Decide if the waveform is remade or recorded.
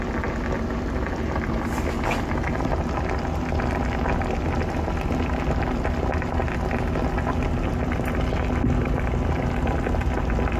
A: recorded